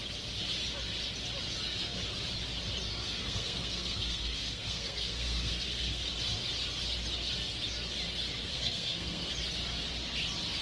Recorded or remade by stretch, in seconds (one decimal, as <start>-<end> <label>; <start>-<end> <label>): 0.0-2.9 recorded; 2.9-6.1 remade; 6.1-8.5 recorded; 8.5-9.3 remade; 9.3-10.6 recorded